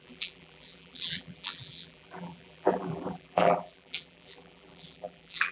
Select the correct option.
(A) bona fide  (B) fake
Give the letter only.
B